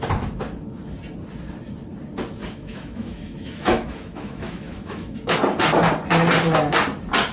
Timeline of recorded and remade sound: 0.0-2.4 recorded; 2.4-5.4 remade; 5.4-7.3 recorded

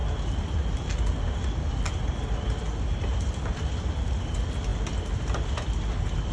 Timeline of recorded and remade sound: 0.0-6.3 recorded

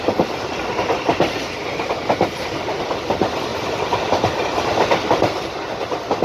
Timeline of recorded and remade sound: 0.0-3.5 recorded; 3.5-4.6 remade; 4.6-6.2 recorded